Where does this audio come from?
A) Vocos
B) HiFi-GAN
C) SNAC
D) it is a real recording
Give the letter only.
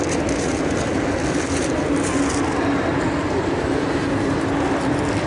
D